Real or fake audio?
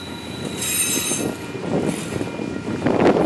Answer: real